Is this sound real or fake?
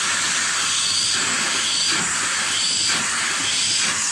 real